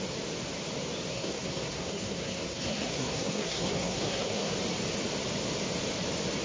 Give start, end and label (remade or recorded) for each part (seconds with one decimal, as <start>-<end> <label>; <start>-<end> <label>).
0.0-1.1 recorded; 1.1-4.5 remade; 4.5-6.4 recorded

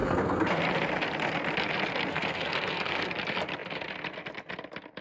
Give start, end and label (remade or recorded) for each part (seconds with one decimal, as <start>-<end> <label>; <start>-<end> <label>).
0.0-0.6 remade; 0.6-2.1 recorded; 2.1-3.1 remade; 3.1-5.0 recorded

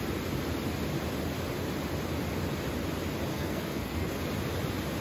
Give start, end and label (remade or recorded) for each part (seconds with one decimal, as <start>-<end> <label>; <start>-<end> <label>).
0.0-3.3 recorded; 3.3-4.2 remade; 4.2-5.0 recorded

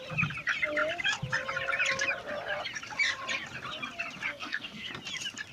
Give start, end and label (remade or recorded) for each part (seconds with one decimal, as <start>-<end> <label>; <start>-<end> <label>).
0.0-4.3 recorded; 4.3-4.9 remade; 4.9-5.5 recorded

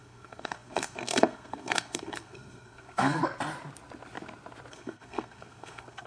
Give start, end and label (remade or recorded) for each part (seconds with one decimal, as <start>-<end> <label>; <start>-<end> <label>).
0.0-3.2 remade; 3.2-4.7 recorded; 4.7-6.1 remade

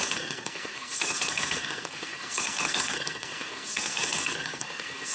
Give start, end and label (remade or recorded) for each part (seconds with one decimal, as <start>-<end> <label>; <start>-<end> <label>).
0.0-5.1 remade

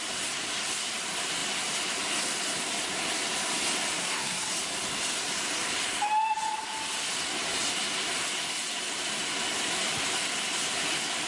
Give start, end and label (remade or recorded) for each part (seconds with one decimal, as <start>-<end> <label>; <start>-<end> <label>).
0.0-4.0 recorded; 4.0-4.5 remade; 4.5-11.3 recorded

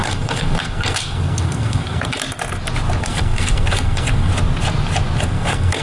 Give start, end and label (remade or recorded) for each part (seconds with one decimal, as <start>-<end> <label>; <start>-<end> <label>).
0.0-2.2 remade; 2.2-3.0 recorded; 3.0-4.3 remade; 4.3-5.2 recorded; 5.2-5.8 remade